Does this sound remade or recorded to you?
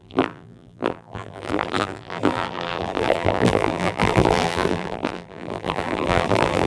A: remade